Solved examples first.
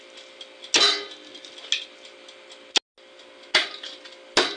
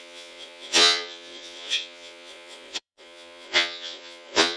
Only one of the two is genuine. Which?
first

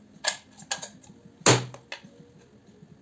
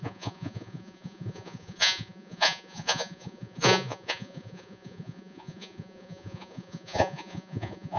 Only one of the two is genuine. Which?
first